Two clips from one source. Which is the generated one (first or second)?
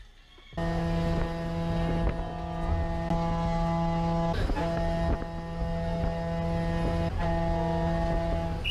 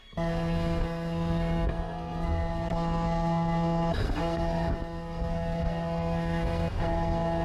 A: second